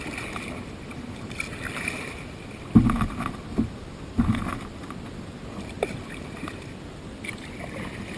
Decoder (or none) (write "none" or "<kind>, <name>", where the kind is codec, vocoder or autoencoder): none